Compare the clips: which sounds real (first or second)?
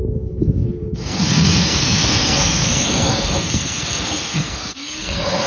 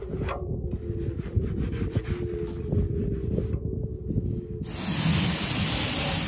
second